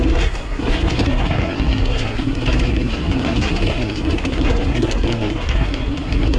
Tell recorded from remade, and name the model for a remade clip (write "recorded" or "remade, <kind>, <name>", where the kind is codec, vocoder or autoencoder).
remade, codec, SNAC